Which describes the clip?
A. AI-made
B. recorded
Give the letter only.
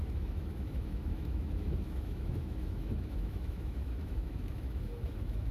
A